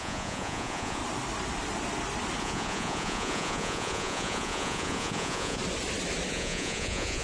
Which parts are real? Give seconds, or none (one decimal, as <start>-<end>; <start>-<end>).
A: 1.0-2.4; 5.6-6.3